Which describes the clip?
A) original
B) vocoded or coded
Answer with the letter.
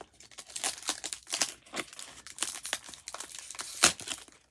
A